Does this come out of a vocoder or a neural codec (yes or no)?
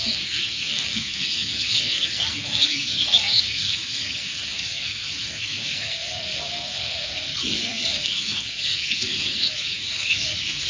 yes